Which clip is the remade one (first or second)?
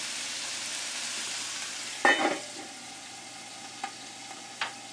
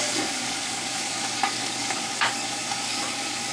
second